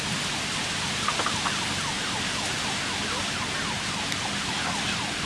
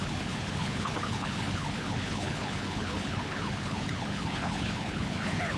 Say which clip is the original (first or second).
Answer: first